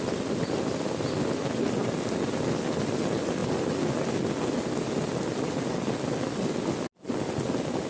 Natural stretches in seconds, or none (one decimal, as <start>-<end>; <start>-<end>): 0.0-7.9